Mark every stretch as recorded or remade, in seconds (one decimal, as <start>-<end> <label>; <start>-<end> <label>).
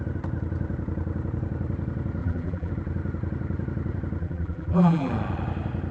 0.0-2.2 recorded; 2.2-2.7 remade; 2.7-4.2 recorded; 4.2-5.1 remade; 5.1-5.9 recorded